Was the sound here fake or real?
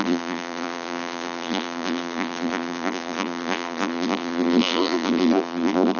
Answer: fake